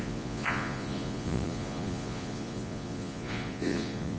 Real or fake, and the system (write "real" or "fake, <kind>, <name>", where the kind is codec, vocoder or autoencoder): fake, vocoder, Vocos